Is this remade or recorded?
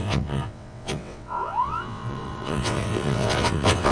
remade